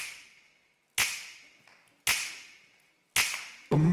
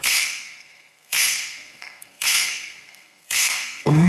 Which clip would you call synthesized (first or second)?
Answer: second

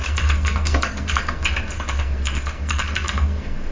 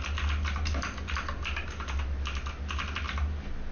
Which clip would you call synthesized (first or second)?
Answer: first